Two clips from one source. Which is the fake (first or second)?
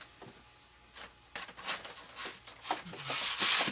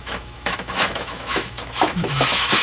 second